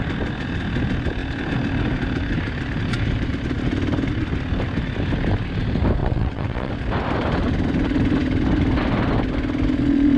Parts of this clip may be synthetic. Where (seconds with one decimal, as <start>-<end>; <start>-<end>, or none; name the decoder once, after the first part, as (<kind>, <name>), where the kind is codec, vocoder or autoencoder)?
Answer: 6.0-6.7 (vocoder, WaveNeXt)